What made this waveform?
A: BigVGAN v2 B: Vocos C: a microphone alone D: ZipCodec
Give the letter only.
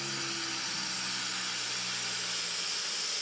C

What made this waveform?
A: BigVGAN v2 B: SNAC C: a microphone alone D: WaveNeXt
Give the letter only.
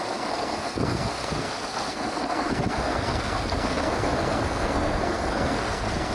B